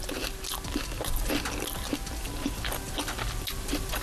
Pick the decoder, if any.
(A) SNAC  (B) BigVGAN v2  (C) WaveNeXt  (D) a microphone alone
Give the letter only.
D